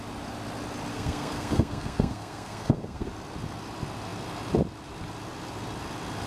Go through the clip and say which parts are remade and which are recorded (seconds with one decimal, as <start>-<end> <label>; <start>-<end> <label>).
0.0-0.9 recorded; 0.9-3.1 remade; 3.1-6.3 recorded